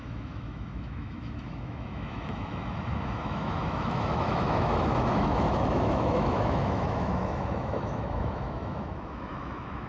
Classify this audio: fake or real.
fake